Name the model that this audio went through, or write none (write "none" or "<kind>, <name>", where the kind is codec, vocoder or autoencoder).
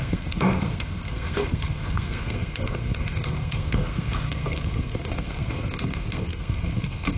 codec, SNAC